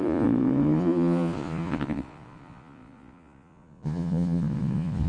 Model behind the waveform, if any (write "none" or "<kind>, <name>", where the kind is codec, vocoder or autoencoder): vocoder, Vocos